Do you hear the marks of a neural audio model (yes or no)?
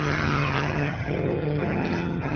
yes